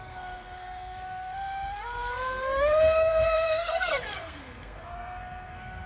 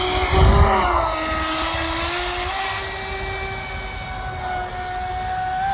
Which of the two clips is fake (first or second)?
first